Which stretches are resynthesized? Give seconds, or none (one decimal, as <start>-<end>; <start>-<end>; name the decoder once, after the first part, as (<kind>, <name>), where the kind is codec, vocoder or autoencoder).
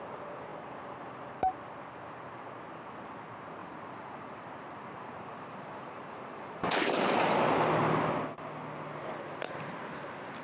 3.6-7.5 (vocoder, BigVGAN v2)